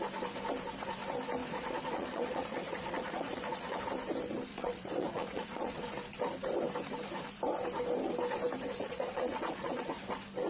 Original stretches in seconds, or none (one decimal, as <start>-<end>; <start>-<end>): 0.0-1.4; 3.8-4.5; 5.9-8.8; 10.1-10.5